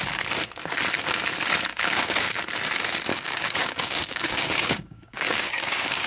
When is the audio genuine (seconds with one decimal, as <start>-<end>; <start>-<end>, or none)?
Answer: 0.0-1.7; 2.4-3.1